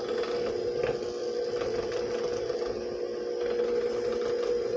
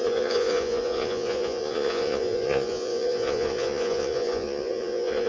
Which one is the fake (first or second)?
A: second